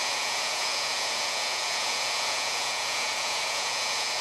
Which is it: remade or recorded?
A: remade